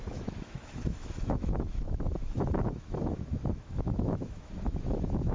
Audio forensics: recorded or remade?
remade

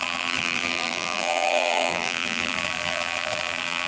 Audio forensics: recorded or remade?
remade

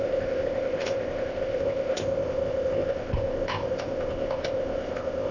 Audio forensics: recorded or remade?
remade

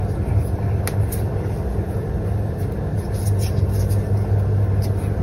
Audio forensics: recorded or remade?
recorded